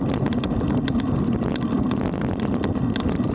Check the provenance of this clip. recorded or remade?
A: recorded